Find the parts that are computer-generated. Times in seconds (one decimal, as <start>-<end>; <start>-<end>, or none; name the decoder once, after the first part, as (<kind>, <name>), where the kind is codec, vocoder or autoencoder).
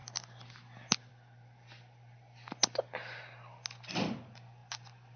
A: none